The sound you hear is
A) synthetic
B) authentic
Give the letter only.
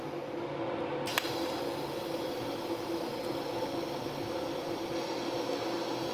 B